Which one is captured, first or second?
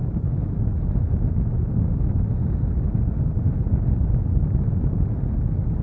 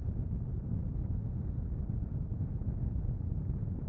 first